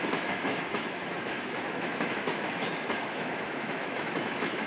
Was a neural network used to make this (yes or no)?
yes